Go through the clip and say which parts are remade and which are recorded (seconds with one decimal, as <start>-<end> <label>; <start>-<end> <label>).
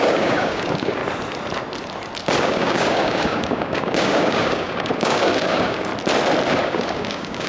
0.0-1.0 remade; 1.0-2.4 recorded; 2.4-5.9 remade; 5.9-6.6 recorded; 6.6-7.5 remade